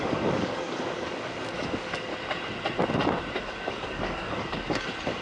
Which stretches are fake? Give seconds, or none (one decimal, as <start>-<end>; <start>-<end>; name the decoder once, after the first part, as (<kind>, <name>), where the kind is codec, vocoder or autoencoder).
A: 0.0-2.1 (codec, DAC); 3.4-5.2